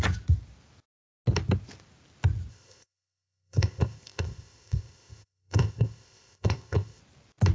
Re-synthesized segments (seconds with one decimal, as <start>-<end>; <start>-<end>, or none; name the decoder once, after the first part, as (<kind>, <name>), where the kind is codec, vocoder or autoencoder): 2.5-7.0 (codec, ZipCodec)